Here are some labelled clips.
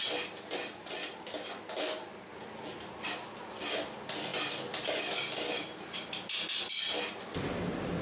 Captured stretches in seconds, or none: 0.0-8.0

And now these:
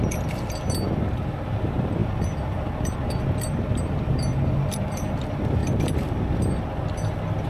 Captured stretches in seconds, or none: 0.0-7.5

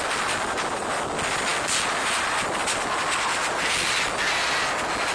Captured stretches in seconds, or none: 0.0-5.1

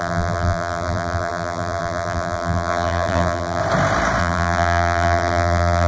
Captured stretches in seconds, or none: 3.6-4.2